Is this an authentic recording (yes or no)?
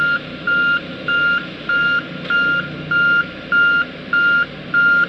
yes